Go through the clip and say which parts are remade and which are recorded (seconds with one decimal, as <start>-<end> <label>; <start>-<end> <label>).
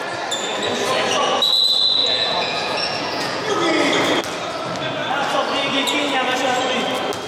0.0-2.0 recorded; 2.0-3.5 remade; 3.5-7.3 recorded